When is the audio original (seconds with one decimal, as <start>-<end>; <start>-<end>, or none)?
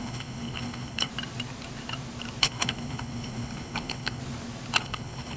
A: 1.1-2.4; 4.2-4.8